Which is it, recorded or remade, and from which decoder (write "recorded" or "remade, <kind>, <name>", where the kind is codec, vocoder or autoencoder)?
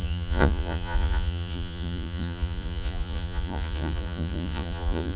remade, vocoder, Vocos